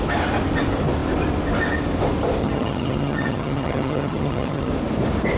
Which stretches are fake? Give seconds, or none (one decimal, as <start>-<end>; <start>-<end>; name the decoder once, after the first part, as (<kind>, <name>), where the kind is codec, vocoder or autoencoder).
2.4-4.7 (vocoder, HiFi-GAN)